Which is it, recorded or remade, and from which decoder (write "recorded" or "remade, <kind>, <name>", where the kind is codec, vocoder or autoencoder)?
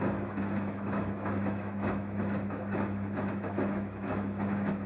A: remade, autoencoder, DAC-VAE